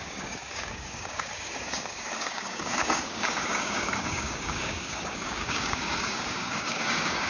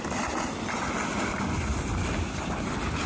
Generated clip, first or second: first